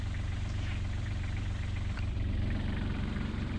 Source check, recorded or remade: remade